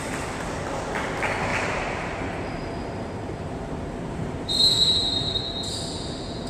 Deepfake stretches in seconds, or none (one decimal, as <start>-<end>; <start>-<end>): 1.5-5.4